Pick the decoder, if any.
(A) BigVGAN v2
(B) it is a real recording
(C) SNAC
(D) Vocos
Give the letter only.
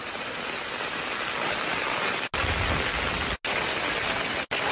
B